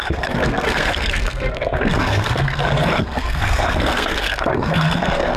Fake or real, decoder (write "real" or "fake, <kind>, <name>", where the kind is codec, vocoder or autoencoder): fake, codec, SNAC